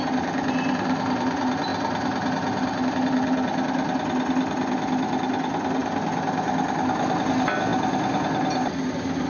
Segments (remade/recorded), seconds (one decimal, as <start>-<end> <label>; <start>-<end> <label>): 0.0-9.3 recorded